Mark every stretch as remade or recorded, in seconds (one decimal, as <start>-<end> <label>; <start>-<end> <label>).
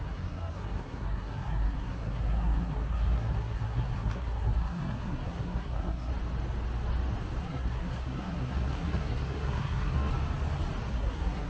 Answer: 0.0-6.1 remade; 6.1-7.4 recorded; 7.4-10.1 remade; 10.1-10.9 recorded; 10.9-11.5 remade